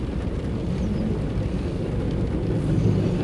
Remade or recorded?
recorded